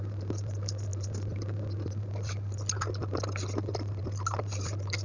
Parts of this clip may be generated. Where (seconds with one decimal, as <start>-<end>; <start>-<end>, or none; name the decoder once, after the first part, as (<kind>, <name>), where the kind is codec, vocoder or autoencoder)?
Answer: none